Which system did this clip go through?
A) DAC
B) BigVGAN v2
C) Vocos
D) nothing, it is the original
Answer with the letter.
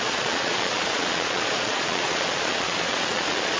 C